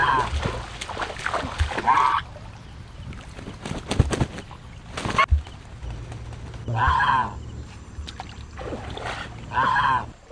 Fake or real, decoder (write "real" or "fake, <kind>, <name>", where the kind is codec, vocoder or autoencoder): real